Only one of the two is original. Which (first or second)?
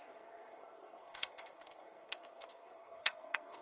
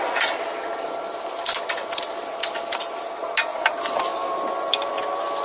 second